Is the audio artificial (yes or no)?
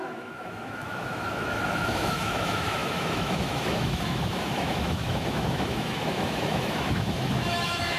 yes